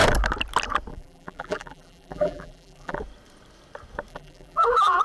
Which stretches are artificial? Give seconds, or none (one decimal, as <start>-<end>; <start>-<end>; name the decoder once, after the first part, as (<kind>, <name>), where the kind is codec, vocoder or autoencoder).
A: 0.9-3.0 (vocoder, BigVGAN v2); 4.1-5.0